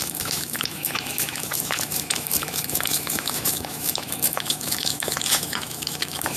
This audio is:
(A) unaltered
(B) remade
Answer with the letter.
B